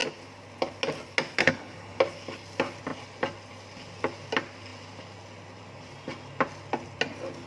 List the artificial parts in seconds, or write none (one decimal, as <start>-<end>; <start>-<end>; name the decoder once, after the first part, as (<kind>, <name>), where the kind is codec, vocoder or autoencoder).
1.4-2.0 (codec, HILCodec)